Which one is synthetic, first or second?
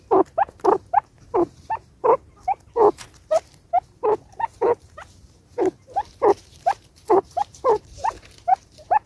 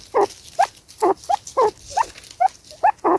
first